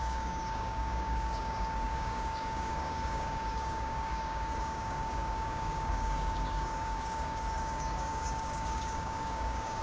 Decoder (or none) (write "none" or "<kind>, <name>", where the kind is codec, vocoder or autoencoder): codec, DAC